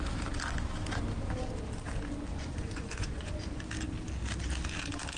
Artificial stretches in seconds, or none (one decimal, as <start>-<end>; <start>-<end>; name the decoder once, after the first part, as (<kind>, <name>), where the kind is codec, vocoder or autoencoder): 2.3-3.6 (vocoder, Vocos)